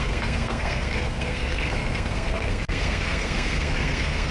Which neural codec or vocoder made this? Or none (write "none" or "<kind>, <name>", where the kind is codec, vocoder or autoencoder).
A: codec, SNAC